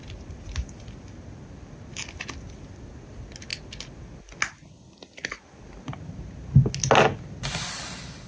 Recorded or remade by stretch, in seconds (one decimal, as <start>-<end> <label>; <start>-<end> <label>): 0.0-8.3 recorded